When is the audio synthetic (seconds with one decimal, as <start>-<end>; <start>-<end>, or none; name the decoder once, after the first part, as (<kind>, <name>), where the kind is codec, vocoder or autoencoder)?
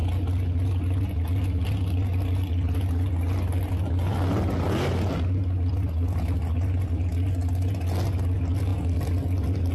none